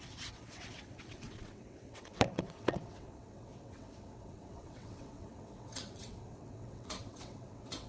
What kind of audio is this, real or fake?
fake